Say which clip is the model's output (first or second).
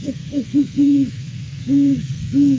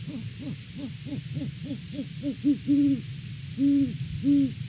first